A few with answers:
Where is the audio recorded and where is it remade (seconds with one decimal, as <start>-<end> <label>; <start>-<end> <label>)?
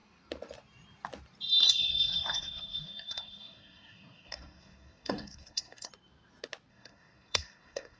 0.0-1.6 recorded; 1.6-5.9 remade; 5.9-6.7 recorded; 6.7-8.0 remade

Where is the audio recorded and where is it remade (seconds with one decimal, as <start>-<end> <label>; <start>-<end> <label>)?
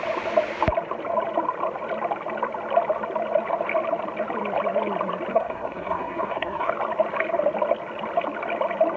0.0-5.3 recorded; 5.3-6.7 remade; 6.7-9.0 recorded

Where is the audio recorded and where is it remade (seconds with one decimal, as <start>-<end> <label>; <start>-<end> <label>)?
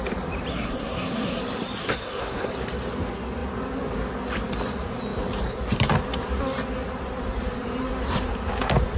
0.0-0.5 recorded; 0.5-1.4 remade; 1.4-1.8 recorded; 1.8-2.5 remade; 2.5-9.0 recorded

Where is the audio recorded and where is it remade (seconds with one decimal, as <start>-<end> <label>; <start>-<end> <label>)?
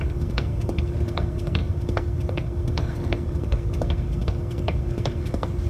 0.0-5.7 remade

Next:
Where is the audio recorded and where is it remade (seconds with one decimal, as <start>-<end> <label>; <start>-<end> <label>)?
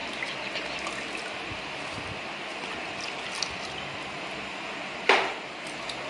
0.0-6.1 recorded